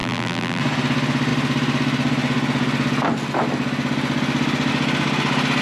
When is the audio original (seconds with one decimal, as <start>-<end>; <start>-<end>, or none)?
0.6-5.6